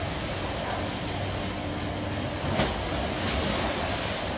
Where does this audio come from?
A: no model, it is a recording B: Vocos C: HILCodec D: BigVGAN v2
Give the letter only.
A